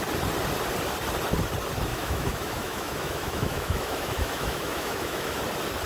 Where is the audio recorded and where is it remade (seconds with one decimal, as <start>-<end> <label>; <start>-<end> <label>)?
0.0-1.9 recorded; 1.9-5.4 remade; 5.4-5.9 recorded